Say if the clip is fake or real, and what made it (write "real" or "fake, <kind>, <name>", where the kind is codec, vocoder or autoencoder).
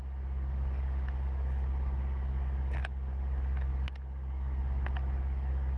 fake, codec, DAC